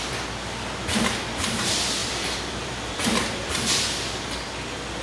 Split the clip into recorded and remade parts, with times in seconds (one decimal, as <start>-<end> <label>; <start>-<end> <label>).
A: 0.0-2.0 recorded; 2.0-3.7 remade; 3.7-5.0 recorded

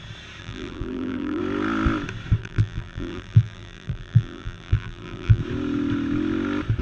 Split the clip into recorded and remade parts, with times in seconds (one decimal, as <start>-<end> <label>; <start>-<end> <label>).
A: 0.0-0.4 recorded; 0.4-1.4 remade; 1.4-2.4 recorded; 2.4-5.4 remade; 5.4-6.8 recorded

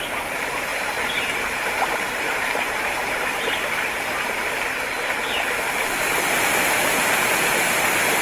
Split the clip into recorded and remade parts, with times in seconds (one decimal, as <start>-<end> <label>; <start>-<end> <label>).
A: 0.0-0.7 recorded; 0.7-4.4 remade; 4.4-8.2 recorded

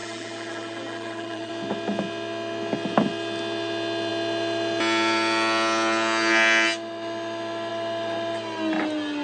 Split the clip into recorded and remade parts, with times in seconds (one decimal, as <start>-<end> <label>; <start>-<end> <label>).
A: 0.0-1.5 remade; 1.5-9.2 recorded

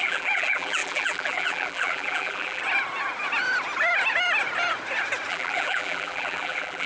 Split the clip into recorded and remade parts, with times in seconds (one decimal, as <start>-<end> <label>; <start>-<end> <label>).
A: 0.0-2.6 remade; 2.6-5.3 recorded; 5.3-6.9 remade

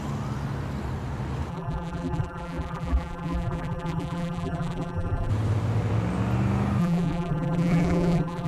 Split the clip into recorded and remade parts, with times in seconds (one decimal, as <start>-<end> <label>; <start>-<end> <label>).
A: 0.0-1.5 recorded; 1.5-5.3 remade; 5.3-6.8 recorded; 6.8-8.5 remade

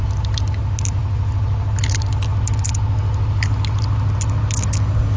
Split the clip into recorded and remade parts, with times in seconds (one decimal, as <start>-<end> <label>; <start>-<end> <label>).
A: 0.0-5.2 recorded